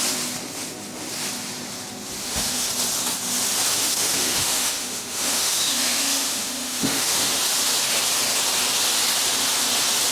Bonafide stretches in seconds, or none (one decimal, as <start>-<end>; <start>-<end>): 0.0-2.2; 2.7-3.7; 7.3-10.1